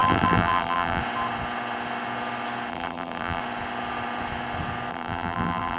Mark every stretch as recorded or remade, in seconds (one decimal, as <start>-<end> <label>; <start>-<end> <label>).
0.0-1.0 remade; 1.0-2.7 recorded; 2.7-3.4 remade; 3.4-4.9 recorded; 4.9-5.8 remade